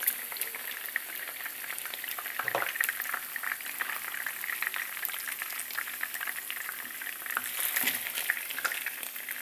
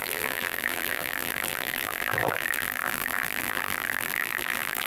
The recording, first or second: first